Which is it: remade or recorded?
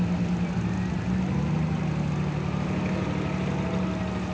recorded